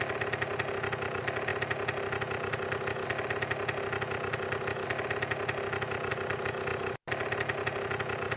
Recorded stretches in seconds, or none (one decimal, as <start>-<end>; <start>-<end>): 0.0-8.4